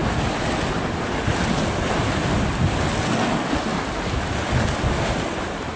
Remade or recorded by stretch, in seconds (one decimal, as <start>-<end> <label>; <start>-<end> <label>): 0.0-5.8 recorded